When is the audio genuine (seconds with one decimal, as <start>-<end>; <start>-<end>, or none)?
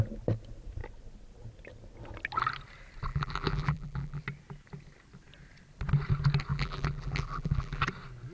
0.0-3.1; 4.2-6.5; 7.8-8.3